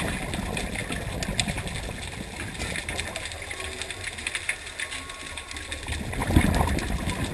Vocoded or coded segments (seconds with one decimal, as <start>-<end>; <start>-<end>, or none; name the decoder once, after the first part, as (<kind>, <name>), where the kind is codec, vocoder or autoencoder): 6.2-6.7 (vocoder, BigVGAN v2)